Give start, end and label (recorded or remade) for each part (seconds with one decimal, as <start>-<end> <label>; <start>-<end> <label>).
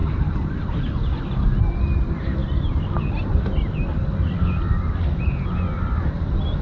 0.0-0.7 remade; 0.7-2.4 recorded; 2.4-6.0 remade; 6.0-6.6 recorded